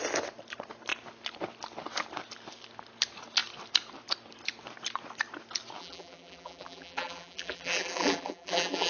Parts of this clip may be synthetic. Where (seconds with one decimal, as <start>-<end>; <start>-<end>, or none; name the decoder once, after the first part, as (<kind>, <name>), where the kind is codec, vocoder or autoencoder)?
5.8-8.9 (vocoder, BigVGAN v2)